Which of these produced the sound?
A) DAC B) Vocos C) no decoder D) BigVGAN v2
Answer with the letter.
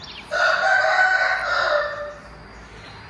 C